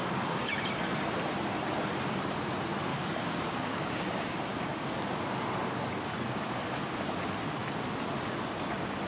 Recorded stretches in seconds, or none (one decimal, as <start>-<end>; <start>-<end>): 0.5-2.9; 4.9-9.1